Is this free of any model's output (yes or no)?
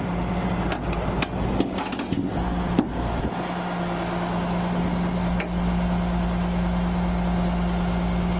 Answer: yes